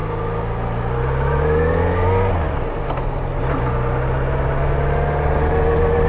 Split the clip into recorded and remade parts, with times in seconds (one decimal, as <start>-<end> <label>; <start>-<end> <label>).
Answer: 0.0-6.1 recorded